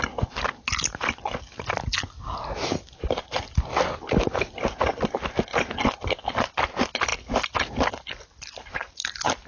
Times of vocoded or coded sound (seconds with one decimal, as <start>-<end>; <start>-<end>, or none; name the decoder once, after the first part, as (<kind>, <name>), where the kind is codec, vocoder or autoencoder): none